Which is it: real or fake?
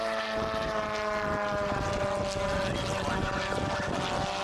real